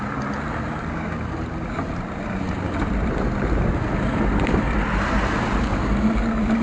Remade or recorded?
recorded